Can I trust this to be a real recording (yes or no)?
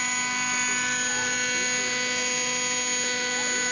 yes